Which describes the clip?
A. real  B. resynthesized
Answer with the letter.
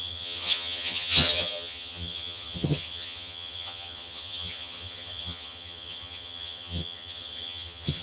B